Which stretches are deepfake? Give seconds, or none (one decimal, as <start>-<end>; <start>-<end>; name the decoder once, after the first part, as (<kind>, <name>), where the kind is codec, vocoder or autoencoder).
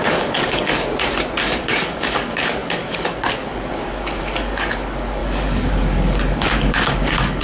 0.0-0.7 (codec, DAC); 1.4-7.4